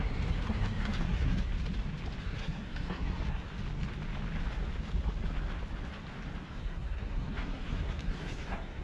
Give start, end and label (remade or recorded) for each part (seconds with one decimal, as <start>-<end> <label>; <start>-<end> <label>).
0.0-1.5 remade; 1.5-2.2 recorded; 2.2-3.5 remade; 3.5-6.4 recorded; 6.4-8.8 remade